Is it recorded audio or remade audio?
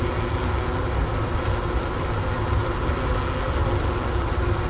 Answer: recorded